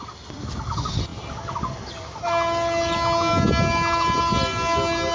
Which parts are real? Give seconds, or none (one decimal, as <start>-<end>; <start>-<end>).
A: 0.0-5.1